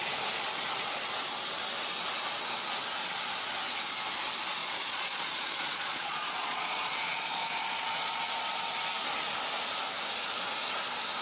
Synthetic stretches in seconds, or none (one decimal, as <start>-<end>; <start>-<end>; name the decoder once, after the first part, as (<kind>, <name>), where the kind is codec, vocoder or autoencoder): 4.6-8.1 (vocoder, Vocos)